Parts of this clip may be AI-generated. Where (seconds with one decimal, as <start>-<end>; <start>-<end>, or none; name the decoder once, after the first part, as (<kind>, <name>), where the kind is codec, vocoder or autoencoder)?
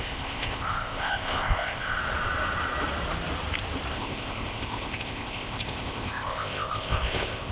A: 0.0-2.0 (codec, ZipCodec); 3.9-7.5